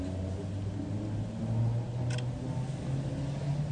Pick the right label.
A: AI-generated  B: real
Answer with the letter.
B